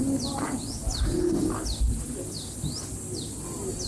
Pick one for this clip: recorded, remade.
recorded